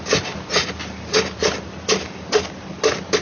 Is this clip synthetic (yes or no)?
no